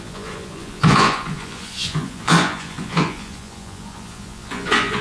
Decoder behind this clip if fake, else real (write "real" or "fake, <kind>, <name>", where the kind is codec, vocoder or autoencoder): fake, vocoder, Vocos